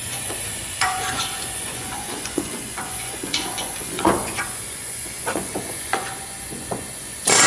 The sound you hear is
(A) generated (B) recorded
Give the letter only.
A